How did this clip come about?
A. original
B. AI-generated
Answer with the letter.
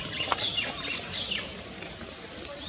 A